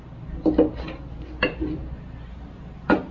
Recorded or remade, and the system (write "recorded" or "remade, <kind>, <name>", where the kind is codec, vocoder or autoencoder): recorded